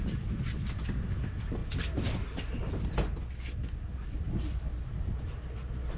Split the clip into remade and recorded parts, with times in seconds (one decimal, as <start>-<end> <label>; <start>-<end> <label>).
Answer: 0.0-6.0 recorded